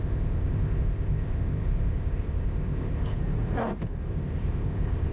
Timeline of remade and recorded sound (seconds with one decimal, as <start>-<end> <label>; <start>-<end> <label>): 0.0-3.2 remade; 3.2-4.1 recorded; 4.1-5.1 remade